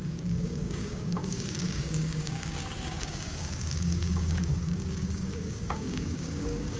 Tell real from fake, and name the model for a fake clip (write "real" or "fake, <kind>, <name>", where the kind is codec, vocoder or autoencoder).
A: fake, codec, DAC